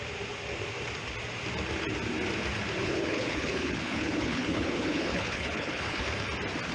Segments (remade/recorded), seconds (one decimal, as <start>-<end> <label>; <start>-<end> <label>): 0.0-2.8 recorded; 2.8-6.0 remade; 6.0-6.7 recorded

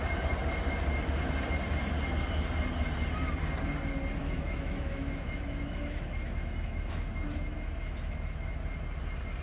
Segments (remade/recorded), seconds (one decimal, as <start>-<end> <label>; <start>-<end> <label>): 0.0-4.2 recorded; 4.2-8.6 remade; 8.6-9.4 recorded